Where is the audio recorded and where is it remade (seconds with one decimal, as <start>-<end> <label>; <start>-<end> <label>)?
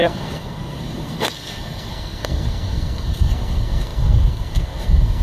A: 0.0-5.2 remade